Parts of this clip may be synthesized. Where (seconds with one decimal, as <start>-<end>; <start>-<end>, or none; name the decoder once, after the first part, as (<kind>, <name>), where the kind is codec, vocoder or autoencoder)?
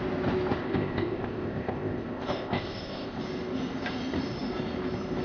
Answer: 0.6-3.2 (codec, ZipCodec)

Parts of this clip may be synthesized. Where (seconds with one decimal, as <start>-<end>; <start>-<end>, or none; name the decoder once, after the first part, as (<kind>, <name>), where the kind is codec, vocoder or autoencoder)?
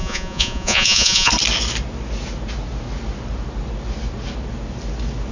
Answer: 0.0-1.3 (vocoder, Vocos)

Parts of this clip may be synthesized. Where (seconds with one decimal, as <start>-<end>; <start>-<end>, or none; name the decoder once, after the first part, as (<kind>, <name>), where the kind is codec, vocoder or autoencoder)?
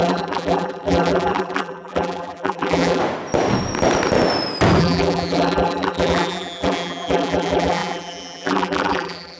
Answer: 0.0-3.0 (vocoder, BigVGAN v2); 4.8-9.4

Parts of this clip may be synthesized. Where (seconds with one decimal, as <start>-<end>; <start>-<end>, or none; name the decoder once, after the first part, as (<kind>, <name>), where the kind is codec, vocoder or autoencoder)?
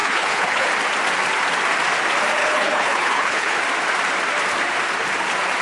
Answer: 0.0-0.7 (codec, HILCodec); 2.4-3.6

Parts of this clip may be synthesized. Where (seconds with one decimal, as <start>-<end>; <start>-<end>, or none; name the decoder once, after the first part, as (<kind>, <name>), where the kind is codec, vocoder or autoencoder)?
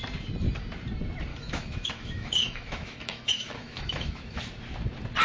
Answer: 1.3-4.4 (autoencoder, DAC-VAE)